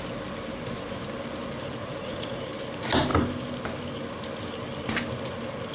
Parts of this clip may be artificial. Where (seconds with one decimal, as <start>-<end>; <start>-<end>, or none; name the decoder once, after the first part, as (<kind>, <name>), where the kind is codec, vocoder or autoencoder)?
1.8-2.4 (vocoder, Vocos)

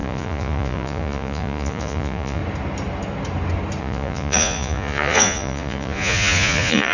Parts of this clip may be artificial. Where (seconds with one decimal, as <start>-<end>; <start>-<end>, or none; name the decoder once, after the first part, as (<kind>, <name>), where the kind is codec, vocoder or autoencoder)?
0.0-2.4 (vocoder, Vocos); 3.8-6.9

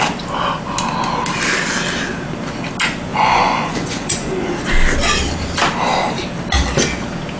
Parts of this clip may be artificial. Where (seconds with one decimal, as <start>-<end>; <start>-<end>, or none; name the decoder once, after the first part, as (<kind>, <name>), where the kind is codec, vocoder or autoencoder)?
3.1-4.3 (vocoder, Vocos)

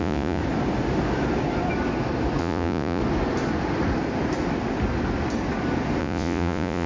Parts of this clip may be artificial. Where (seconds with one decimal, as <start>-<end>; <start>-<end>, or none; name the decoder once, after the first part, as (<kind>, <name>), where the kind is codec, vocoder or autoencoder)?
0.0-0.4 (vocoder, Vocos); 2.4-3.0; 6.0-6.9